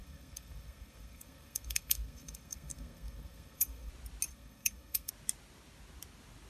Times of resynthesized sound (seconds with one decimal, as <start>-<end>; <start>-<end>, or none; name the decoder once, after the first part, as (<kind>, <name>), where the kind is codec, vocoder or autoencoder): 0.0-3.9 (codec, SNAC); 4.3-5.1